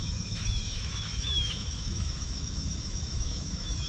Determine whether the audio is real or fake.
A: fake